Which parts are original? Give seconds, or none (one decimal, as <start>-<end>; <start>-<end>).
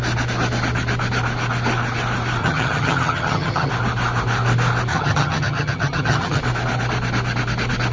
0.0-2.4; 3.7-4.9; 6.4-7.9